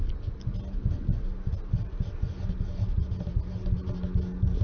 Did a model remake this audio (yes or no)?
no